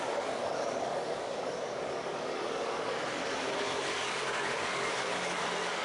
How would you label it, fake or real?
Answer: fake